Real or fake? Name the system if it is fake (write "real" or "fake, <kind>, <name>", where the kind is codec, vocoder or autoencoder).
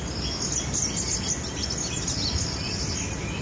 real